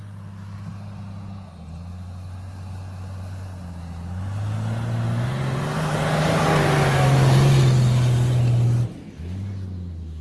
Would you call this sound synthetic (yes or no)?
no